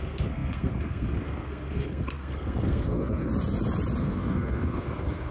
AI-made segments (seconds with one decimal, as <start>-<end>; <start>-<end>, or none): 0.0-3.3; 4.0-5.3